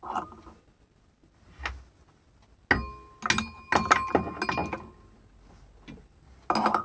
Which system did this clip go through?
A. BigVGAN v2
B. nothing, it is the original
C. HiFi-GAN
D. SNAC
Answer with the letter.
B